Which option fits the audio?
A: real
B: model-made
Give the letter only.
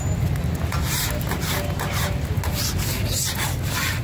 A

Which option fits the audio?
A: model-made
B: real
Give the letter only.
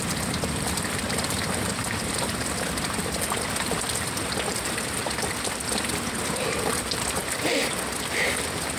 A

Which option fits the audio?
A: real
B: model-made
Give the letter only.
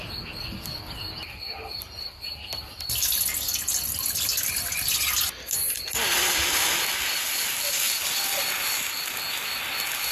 A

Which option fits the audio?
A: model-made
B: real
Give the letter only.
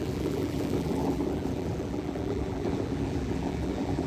A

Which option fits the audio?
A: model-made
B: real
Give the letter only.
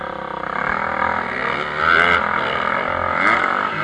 B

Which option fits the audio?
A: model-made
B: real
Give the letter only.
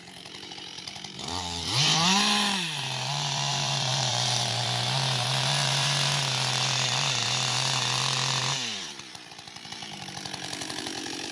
A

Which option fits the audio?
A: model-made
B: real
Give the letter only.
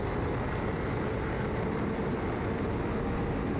B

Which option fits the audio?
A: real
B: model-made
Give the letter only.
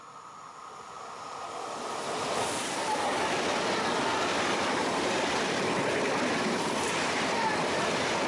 B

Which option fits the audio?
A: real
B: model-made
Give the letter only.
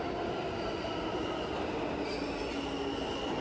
A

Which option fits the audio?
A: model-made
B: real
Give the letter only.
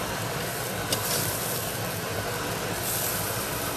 A